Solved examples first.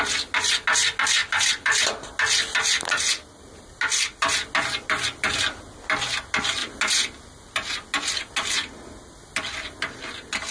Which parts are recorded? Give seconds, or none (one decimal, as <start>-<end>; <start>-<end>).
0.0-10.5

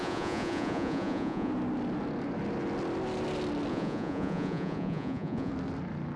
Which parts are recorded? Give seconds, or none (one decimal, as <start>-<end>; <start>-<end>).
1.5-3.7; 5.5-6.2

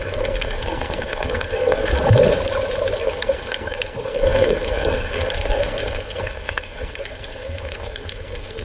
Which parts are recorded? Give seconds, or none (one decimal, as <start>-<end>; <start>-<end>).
1.9-3.0